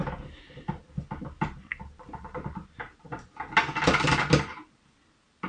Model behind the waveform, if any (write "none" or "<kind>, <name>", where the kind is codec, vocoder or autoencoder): none